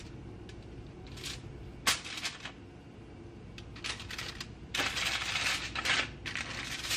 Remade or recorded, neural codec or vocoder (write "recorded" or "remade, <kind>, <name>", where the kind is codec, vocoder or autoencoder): recorded